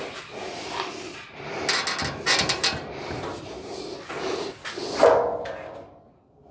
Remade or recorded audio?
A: recorded